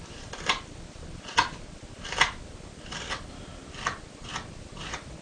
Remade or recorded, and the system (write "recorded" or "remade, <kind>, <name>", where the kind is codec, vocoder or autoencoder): recorded